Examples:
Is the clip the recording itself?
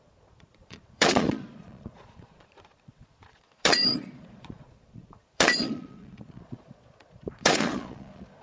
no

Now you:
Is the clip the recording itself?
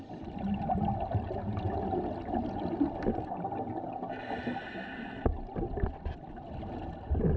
yes